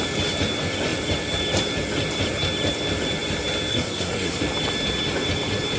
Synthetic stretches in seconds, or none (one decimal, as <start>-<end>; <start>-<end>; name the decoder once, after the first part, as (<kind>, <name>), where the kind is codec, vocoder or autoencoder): 3.7-4.4 (codec, SNAC)